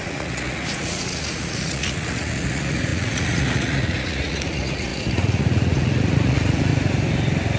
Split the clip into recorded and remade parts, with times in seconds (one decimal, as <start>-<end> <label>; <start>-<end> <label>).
0.0-6.7 remade; 6.7-7.6 recorded